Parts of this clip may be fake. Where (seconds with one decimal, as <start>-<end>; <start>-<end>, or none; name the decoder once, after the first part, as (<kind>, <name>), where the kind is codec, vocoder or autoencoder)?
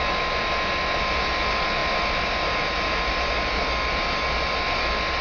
none